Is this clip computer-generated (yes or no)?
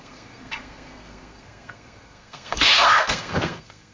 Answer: yes